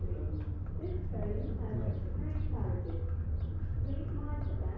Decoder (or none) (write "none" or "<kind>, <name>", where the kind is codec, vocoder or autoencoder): none